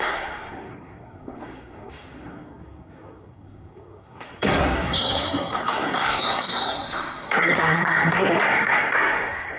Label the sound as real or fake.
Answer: fake